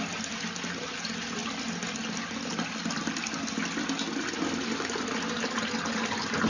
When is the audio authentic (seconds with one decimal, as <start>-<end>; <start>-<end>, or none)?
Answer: 0.0-6.5